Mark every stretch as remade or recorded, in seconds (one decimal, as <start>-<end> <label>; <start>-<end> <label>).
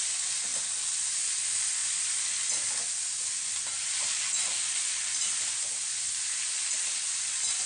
0.0-7.7 recorded